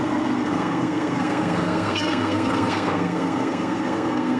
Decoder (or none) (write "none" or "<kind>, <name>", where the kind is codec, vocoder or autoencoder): codec, SNAC